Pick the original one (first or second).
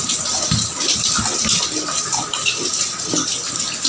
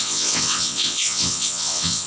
first